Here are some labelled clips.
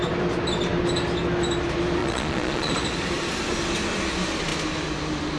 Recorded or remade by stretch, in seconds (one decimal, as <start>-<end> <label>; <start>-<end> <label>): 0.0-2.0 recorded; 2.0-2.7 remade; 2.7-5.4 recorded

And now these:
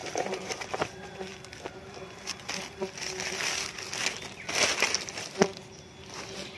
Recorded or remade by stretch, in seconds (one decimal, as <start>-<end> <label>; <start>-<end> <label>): 0.0-6.6 recorded

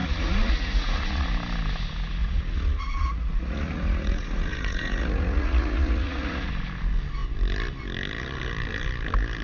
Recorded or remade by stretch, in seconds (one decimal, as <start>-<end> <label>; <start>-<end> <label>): 0.0-1.3 remade; 1.3-2.2 recorded; 2.2-6.5 remade; 6.5-9.4 recorded

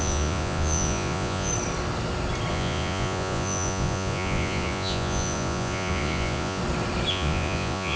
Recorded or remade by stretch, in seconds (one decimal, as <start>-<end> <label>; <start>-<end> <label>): 0.0-1.5 remade; 1.5-2.5 recorded; 2.5-6.6 remade; 6.6-7.1 recorded; 7.1-8.0 remade